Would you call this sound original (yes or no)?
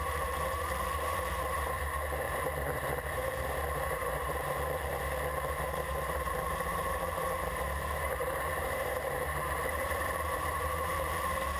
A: no